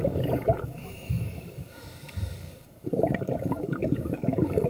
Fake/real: fake